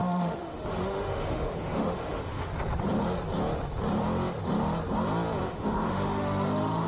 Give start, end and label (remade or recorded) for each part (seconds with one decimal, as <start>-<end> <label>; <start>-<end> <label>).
0.0-2.5 remade; 2.5-5.4 recorded; 5.4-6.9 remade